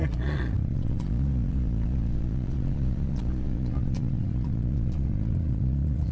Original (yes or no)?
no